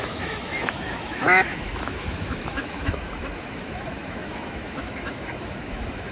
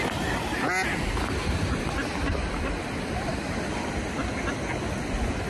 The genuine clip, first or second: second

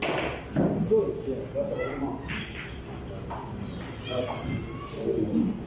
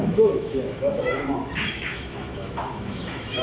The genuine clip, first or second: first